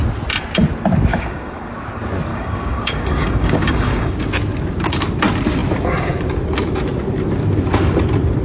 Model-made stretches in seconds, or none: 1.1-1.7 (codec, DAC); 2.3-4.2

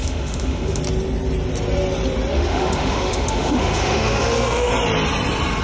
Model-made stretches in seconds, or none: 0.0-0.8 (autoencoder, DAC-VAE); 2.3-4.7

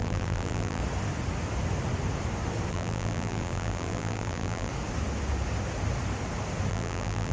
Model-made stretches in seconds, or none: 0.0-0.8 (vocoder, BigVGAN v2); 2.7-4.7; 6.7-7.3

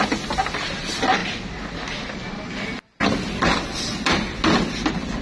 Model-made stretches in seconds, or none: none

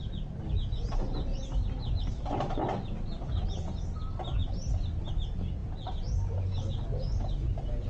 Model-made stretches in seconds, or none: none

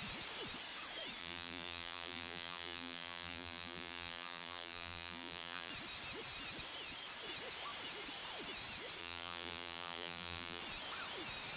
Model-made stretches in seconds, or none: 1.2-5.7 (vocoder, BigVGAN v2); 9.0-10.6